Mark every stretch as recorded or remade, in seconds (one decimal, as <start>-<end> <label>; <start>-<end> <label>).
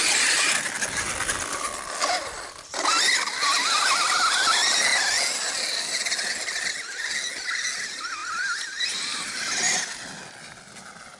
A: 0.0-8.2 recorded; 8.2-9.2 remade; 9.2-11.2 recorded